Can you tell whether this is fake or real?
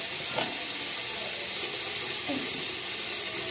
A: real